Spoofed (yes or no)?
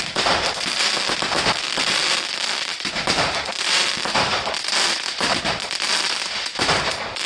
yes